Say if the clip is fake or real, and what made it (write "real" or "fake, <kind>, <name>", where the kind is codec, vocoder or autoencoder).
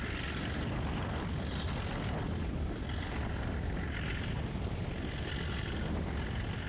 real